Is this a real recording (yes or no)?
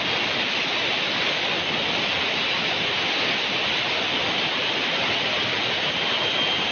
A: yes